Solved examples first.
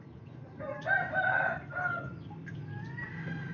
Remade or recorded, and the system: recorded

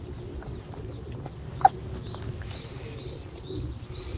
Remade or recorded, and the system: recorded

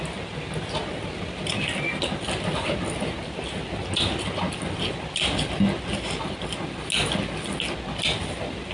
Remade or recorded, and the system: recorded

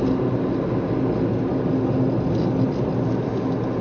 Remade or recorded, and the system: recorded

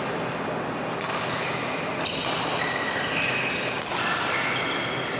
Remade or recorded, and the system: recorded